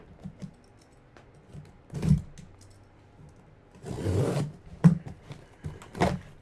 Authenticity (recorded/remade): recorded